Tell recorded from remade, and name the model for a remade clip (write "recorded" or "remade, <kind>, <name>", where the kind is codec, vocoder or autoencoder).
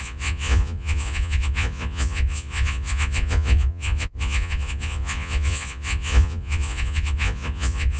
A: remade, vocoder, Vocos